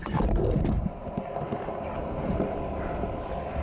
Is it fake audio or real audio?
real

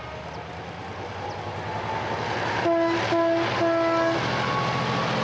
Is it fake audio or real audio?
real